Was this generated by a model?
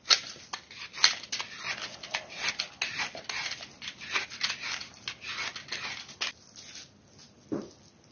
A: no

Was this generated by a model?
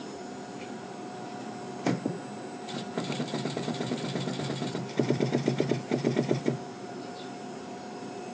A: yes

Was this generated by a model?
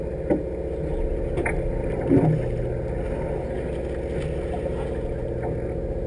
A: no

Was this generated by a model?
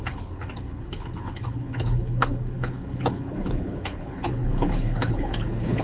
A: yes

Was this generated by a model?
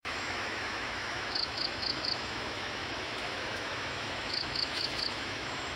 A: yes